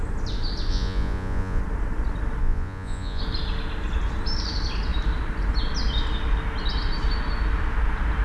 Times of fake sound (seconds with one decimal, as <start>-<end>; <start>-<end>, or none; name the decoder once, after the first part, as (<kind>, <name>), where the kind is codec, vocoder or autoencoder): 0.7-1.6 (vocoder, Vocos); 2.4-3.2